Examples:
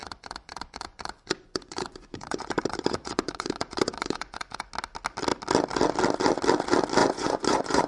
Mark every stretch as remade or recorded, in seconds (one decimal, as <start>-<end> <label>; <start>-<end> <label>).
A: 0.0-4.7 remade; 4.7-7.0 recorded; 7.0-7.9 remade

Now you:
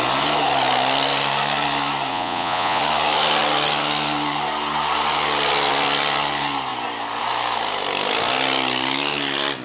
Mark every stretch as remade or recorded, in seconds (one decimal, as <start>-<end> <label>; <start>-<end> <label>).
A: 0.0-2.1 recorded; 2.1-2.8 remade; 2.8-9.6 recorded

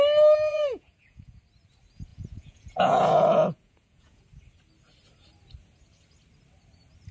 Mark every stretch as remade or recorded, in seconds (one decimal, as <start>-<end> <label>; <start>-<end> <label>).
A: 0.0-0.5 recorded; 0.5-1.4 remade; 1.4-2.1 recorded; 2.1-4.2 remade; 4.2-7.1 recorded

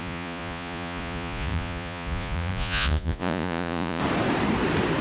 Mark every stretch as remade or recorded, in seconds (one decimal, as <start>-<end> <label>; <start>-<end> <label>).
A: 0.0-4.0 remade; 4.0-5.0 recorded